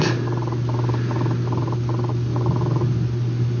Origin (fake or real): real